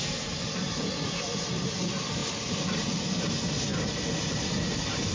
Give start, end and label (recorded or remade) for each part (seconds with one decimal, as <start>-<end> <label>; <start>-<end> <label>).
0.0-5.1 recorded